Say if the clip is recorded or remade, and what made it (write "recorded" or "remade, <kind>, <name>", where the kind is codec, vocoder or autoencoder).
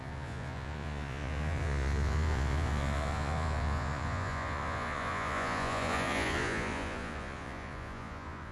remade, vocoder, Vocos